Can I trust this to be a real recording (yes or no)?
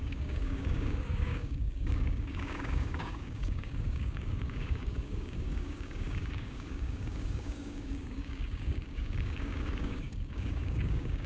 no